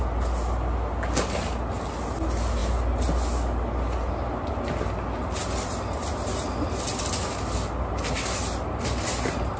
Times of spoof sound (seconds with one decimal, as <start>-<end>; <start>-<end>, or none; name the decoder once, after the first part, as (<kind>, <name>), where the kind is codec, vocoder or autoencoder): none